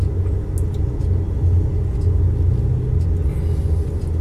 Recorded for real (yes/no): yes